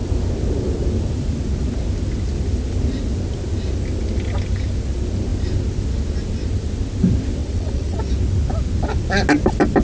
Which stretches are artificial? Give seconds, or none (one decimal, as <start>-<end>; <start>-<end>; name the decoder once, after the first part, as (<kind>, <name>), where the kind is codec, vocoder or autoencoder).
7.4-8.0 (vocoder, WaveNeXt)